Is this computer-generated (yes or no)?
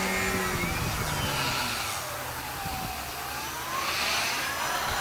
no